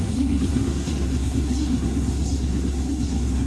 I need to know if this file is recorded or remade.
remade